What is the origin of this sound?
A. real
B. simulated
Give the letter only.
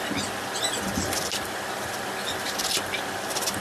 A